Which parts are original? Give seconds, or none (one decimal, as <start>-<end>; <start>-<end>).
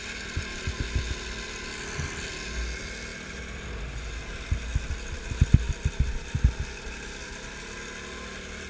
0.0-8.7